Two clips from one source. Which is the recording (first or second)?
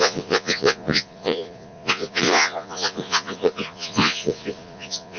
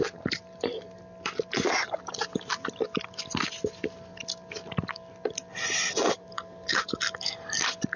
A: second